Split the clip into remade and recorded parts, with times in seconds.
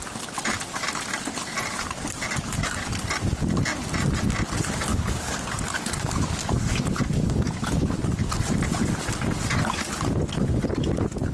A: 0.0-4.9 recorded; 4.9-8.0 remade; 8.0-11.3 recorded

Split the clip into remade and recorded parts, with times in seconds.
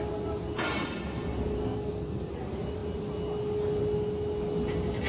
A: 0.0-1.6 recorded; 1.6-2.3 remade; 2.3-5.1 recorded